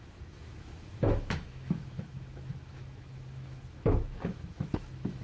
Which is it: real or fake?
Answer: fake